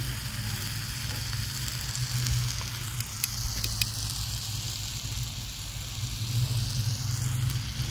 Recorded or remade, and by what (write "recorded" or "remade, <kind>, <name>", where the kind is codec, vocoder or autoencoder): recorded